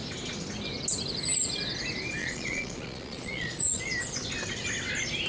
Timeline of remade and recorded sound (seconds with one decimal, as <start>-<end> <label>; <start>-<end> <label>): 0.0-2.2 recorded; 2.2-3.8 remade; 3.8-5.3 recorded